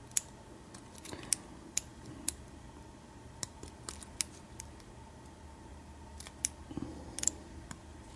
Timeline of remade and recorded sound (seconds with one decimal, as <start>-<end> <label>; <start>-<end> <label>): 0.0-8.2 recorded